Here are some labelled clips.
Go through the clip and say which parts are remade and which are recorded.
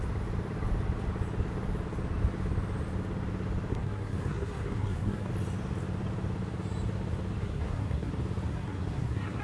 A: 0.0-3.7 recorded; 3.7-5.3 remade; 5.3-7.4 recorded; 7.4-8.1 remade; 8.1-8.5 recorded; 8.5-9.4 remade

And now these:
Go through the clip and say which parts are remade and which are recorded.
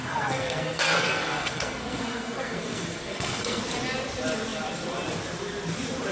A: 0.0-3.6 remade; 3.6-6.1 recorded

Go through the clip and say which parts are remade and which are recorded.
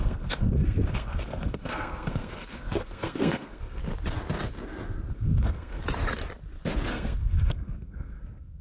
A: 0.0-3.8 remade; 3.8-5.1 recorded; 5.1-5.8 remade; 5.8-6.9 recorded; 6.9-8.6 remade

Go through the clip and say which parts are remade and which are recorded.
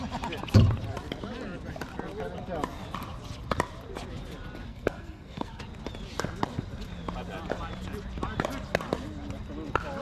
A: 0.0-4.7 recorded; 4.7-5.6 remade; 5.6-10.0 recorded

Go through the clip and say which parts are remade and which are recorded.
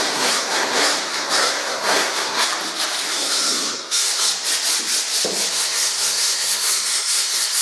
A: 0.0-2.5 remade; 2.5-3.1 recorded; 3.1-4.3 remade; 4.3-5.5 recorded; 5.5-7.6 remade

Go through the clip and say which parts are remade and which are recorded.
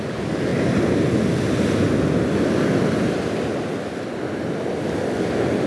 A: 0.0-5.7 recorded